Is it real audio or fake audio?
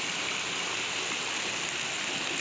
real